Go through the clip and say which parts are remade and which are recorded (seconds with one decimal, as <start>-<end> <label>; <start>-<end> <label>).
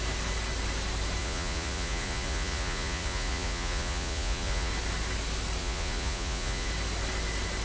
0.0-1.2 recorded; 1.2-4.7 remade; 4.7-5.6 recorded; 5.6-6.7 remade; 6.7-7.6 recorded